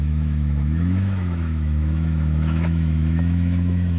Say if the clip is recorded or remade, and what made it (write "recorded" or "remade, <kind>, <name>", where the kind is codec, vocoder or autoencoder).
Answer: remade, autoencoder, DAC-VAE